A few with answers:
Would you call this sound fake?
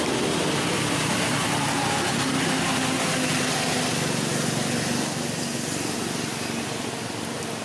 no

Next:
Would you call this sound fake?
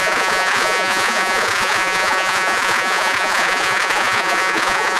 yes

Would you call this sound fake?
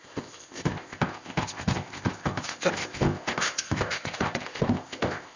yes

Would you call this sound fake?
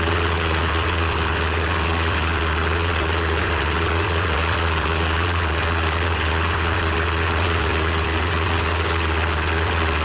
yes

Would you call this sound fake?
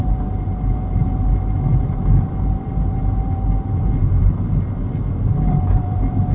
no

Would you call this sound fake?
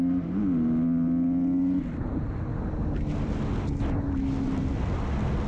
no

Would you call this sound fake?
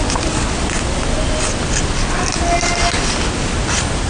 no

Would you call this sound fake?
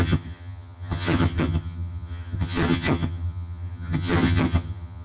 yes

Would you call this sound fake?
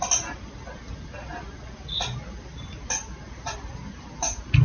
no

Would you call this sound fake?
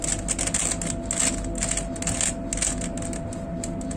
no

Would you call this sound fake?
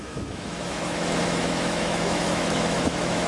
yes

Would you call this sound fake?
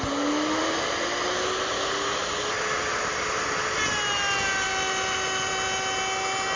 no